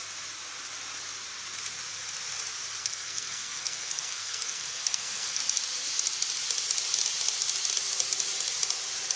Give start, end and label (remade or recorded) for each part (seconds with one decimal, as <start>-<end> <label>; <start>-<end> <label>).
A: 0.0-2.8 recorded; 2.8-5.4 remade; 5.4-9.2 recorded